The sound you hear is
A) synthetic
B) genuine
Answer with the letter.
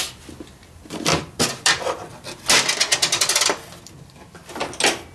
B